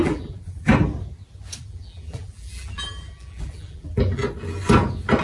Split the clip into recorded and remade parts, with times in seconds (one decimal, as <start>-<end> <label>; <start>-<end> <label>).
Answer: 0.0-0.7 remade; 0.7-1.6 recorded; 1.6-4.2 remade; 4.2-5.2 recorded